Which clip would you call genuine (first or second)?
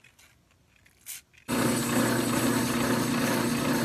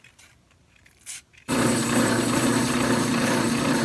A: first